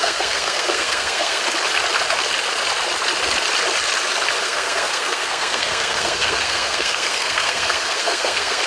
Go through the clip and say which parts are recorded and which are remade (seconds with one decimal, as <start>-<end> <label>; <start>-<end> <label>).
0.0-1.4 remade; 1.4-4.4 recorded; 4.4-8.7 remade